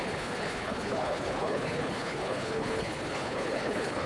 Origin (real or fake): fake